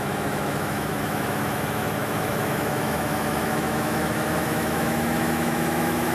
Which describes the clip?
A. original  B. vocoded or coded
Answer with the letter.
B